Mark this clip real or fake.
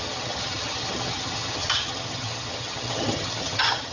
fake